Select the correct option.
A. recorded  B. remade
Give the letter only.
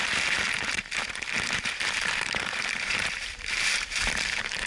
B